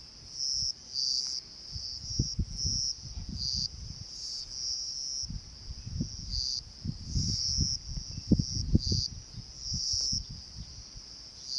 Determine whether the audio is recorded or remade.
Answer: recorded